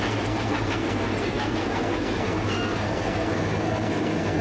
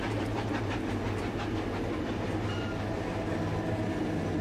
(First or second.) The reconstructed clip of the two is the first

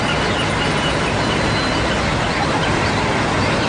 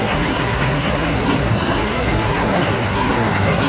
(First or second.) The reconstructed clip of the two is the second